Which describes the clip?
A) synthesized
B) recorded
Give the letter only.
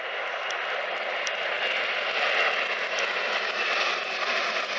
B